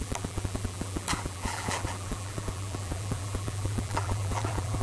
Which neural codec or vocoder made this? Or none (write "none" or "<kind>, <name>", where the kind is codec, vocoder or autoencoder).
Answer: vocoder, BigVGAN v2